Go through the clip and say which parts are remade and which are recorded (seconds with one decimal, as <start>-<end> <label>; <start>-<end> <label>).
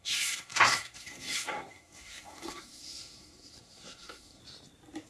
0.0-4.4 remade; 4.4-5.1 recorded